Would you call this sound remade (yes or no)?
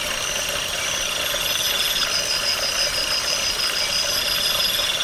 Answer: no